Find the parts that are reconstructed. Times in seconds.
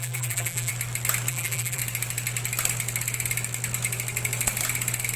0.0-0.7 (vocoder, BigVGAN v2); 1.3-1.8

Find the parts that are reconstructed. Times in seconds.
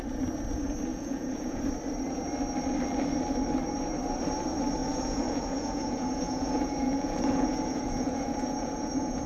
0.9-1.6 (vocoder, Vocos); 4.8-9.3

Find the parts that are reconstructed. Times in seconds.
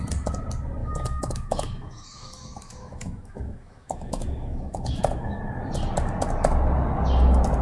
0.8-5.4 (autoencoder, DAC-VAE)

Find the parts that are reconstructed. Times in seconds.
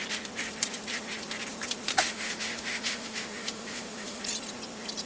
1.9-4.2 (autoencoder, DAC-VAE)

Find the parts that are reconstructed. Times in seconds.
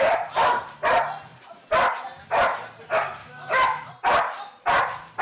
3.2-3.9 (autoencoder, DAC-VAE)